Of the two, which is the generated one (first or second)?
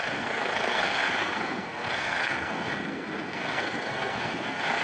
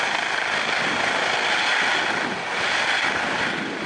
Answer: first